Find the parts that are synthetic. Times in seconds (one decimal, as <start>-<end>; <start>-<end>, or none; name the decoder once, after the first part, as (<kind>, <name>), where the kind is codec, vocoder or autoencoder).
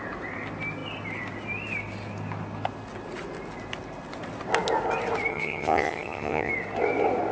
5.3-6.5 (vocoder, HiFi-GAN)